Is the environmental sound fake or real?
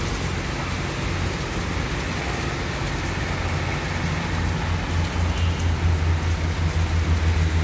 real